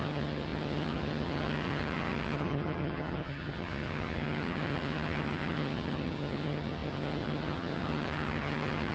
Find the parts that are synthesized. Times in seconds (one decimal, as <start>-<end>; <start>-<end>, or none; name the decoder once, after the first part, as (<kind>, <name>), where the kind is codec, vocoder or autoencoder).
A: 0.0-8.9 (vocoder, HiFi-GAN)